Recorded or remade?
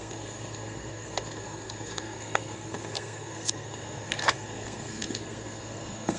remade